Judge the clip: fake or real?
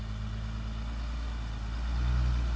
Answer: real